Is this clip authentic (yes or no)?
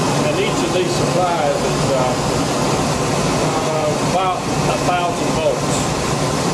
yes